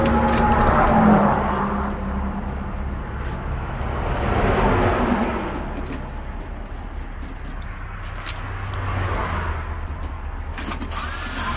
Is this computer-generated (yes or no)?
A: no